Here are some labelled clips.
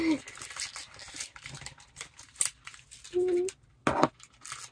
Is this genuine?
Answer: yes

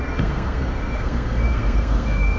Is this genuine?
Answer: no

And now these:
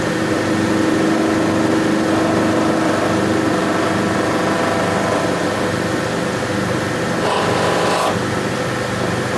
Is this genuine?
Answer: yes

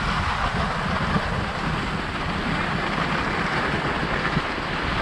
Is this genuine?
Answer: yes